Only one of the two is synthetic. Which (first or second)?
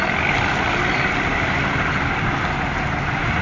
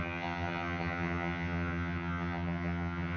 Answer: second